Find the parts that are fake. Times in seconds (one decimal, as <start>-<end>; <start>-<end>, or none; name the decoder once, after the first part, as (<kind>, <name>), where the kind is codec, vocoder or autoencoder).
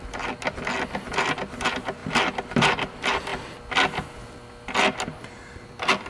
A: 2.0-2.7 (vocoder, BigVGAN v2)